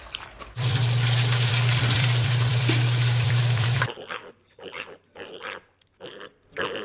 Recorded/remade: remade